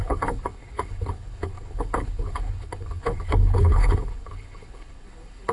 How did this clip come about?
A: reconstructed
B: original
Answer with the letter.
A